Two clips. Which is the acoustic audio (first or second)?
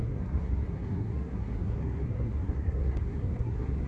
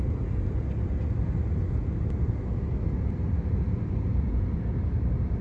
second